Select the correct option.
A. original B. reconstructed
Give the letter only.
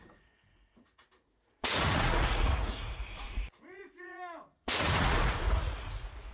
B